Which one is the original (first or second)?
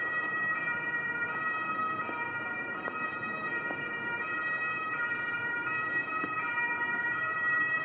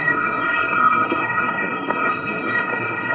first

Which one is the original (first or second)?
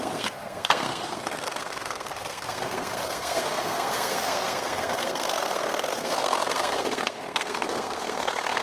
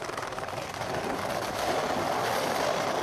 second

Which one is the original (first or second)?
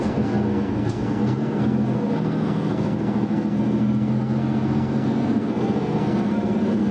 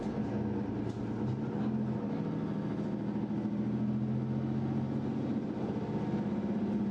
second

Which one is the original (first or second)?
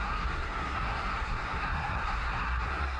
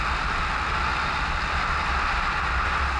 second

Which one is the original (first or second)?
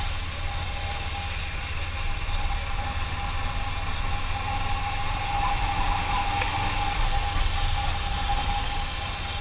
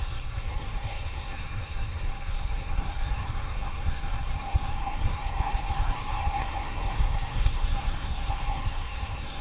first